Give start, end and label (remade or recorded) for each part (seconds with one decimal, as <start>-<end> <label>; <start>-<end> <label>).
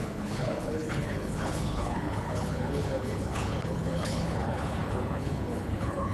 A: 0.0-6.1 remade